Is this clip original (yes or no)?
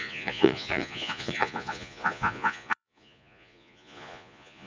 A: no